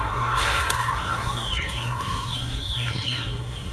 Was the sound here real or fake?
fake